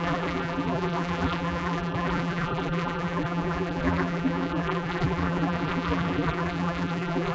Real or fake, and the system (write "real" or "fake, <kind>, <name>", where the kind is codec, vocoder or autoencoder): fake, vocoder, BigVGAN v2